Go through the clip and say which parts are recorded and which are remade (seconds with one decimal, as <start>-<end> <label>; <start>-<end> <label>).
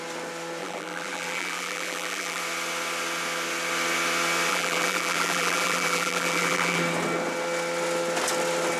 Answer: 0.0-0.6 recorded; 0.6-2.4 remade; 2.4-4.5 recorded; 4.5-6.8 remade; 6.8-8.8 recorded